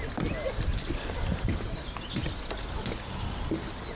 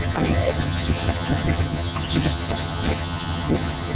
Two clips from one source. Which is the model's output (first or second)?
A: second